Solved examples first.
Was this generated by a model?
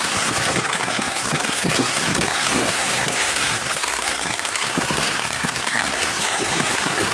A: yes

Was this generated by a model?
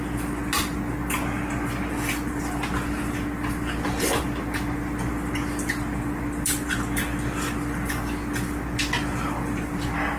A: no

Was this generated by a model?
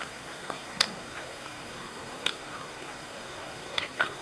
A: yes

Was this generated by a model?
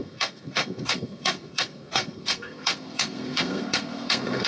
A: yes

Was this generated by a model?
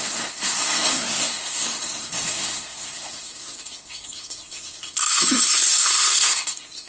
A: yes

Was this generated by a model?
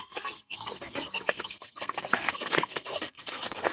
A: yes